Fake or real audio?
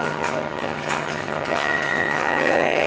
fake